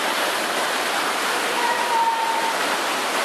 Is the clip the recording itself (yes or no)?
yes